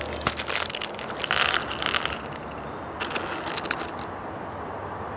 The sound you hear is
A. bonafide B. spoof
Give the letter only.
A